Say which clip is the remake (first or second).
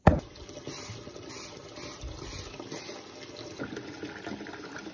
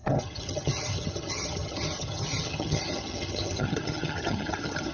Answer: second